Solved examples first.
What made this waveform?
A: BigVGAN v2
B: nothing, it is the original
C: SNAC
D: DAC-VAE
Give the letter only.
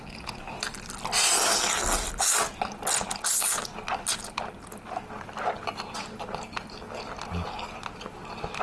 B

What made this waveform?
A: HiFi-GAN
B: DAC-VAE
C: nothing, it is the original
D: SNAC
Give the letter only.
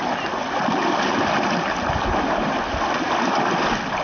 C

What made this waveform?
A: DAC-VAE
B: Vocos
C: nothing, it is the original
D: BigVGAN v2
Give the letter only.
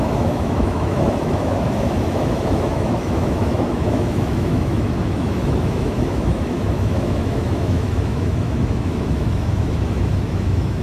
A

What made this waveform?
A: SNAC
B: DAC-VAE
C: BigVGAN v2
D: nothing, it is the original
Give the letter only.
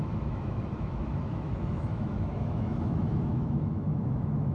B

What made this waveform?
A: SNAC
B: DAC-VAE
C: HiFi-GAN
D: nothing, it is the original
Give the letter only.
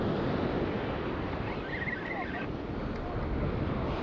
D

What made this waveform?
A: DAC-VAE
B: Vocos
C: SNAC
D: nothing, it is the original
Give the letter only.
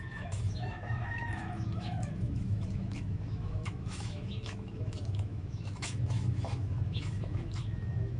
A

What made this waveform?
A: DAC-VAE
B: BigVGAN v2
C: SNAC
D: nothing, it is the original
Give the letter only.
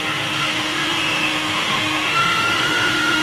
A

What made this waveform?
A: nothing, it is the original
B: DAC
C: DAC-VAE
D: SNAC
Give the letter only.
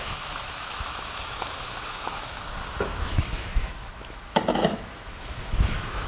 C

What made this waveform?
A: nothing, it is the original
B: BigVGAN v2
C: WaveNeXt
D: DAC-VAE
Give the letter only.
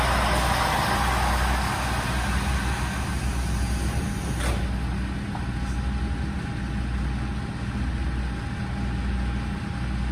A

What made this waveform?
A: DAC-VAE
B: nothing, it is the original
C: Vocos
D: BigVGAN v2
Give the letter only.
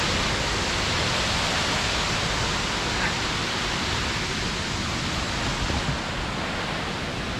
B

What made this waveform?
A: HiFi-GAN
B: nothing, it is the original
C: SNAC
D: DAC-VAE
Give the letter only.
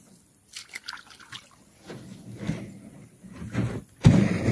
B